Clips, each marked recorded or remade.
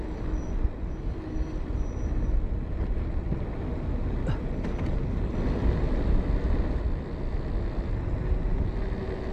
recorded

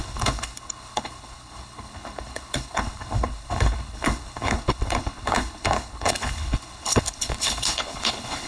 remade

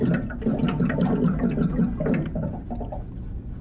recorded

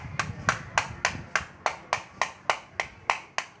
recorded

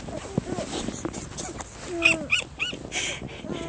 recorded